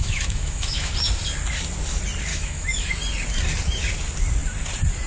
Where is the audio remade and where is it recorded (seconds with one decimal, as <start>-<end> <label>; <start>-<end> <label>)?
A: 0.0-0.9 remade; 0.9-2.3 recorded; 2.3-2.9 remade; 2.9-5.1 recorded